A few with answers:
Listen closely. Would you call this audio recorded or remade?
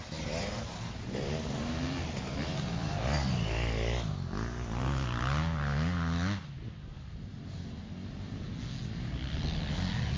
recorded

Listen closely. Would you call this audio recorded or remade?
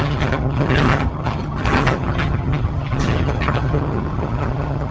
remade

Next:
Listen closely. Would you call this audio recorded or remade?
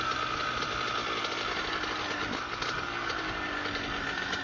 recorded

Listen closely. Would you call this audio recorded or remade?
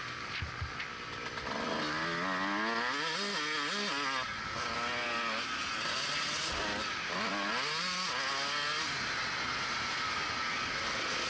recorded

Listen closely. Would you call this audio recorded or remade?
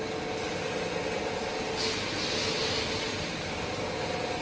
recorded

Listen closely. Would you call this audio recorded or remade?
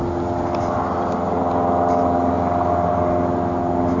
recorded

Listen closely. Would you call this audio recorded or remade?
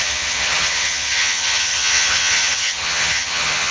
remade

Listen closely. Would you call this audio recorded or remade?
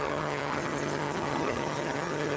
remade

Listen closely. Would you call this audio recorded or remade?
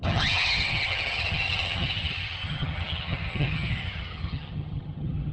remade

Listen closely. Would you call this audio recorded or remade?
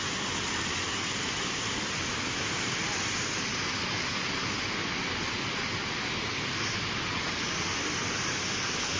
recorded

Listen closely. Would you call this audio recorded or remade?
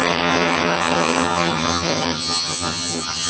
remade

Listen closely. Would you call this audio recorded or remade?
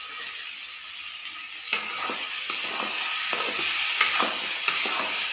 recorded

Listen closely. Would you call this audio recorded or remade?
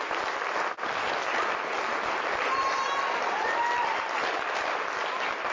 recorded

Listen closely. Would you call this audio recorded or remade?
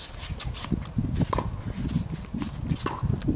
recorded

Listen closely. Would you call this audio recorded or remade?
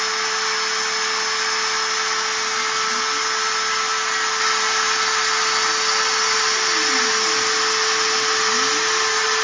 recorded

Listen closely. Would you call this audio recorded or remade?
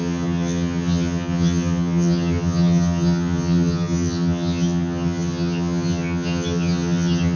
remade